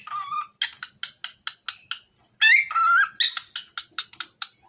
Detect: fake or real real